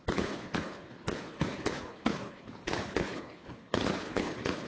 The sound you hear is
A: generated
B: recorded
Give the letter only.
A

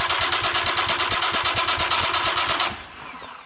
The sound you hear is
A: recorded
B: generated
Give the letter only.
A